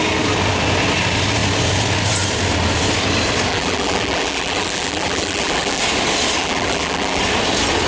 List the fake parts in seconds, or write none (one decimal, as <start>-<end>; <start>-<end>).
3.5-5.8; 6.4-7.2